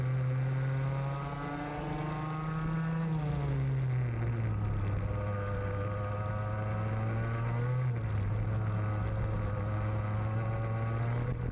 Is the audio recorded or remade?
recorded